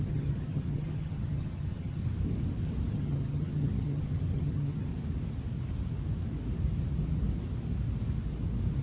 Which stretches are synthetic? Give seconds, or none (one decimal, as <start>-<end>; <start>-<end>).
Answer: 0.0-2.0; 2.9-4.9

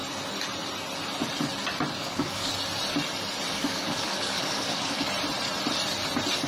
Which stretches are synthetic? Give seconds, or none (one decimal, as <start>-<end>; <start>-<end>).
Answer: 2.0-2.5; 3.5-5.1

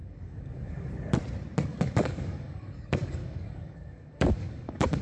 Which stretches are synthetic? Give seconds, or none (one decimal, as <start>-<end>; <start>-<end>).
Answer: 0.0-0.9; 1.7-5.0

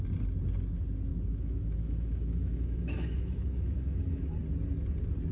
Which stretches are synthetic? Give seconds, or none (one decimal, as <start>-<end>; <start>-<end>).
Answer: 1.1-4.3